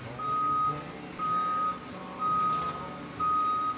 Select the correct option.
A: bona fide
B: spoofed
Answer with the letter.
A